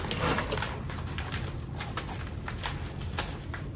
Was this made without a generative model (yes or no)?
yes